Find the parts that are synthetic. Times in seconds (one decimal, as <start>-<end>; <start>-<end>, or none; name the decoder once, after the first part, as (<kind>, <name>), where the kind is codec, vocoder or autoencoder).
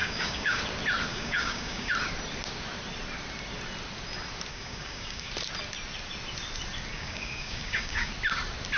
0.0-0.6 (codec, DAC); 1.1-1.9; 4.5-5.3; 6.9-8.1